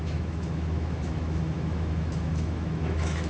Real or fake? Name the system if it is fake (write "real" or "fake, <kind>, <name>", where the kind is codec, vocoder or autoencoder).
fake, autoencoder, DAC-VAE